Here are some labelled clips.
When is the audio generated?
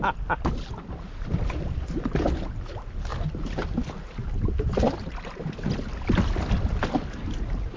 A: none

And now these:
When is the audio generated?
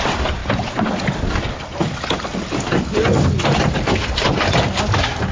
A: 0.0-0.4; 3.6-5.3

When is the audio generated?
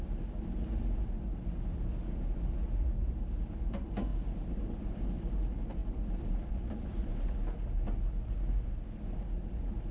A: 4.1-5.0; 5.8-7.1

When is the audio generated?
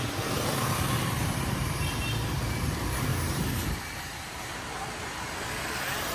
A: 1.2-1.8; 3.1-4.8